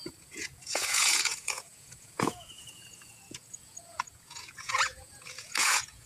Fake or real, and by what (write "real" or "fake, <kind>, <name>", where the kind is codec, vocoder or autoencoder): fake, vocoder, Vocos